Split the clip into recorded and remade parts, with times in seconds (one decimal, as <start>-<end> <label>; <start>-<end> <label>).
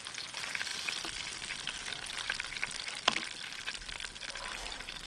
0.0-5.1 recorded